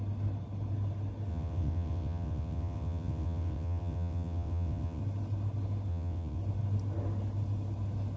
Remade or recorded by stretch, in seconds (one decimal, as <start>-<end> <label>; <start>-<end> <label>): 0.0-1.3 recorded; 1.3-5.0 remade; 5.0-5.9 recorded; 5.9-6.4 remade; 6.4-8.2 recorded